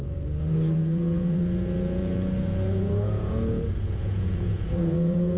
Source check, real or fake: fake